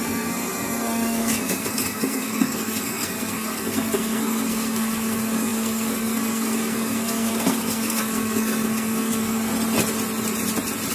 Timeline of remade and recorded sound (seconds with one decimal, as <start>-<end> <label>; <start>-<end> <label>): 0.0-9.5 remade; 9.5-10.9 recorded